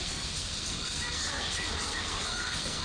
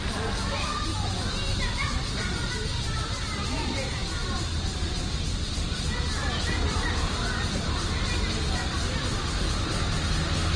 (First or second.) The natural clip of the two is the second